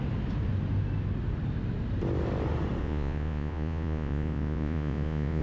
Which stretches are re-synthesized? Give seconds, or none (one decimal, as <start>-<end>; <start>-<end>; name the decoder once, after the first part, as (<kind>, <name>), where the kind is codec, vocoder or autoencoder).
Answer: 2.8-5.4 (vocoder, Vocos)